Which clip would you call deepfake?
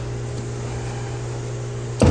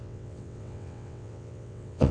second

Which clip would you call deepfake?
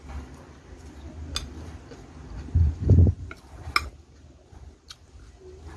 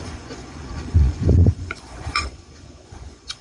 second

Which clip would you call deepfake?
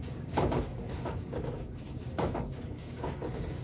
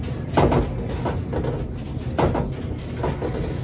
first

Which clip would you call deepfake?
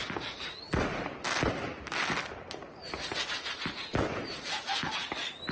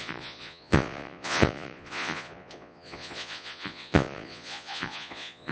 second